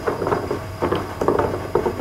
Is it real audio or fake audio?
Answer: real